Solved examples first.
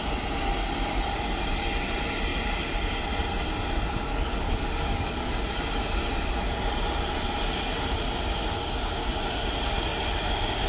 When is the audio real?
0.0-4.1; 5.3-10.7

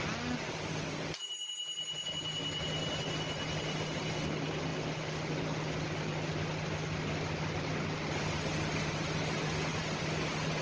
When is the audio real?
0.0-10.6

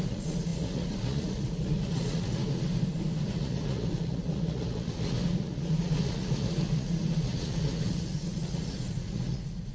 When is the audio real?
2.4-3.3

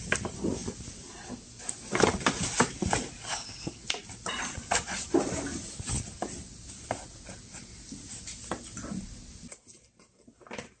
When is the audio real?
0.0-3.3; 3.8-10.8

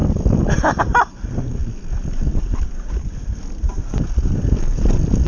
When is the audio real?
0.0-5.3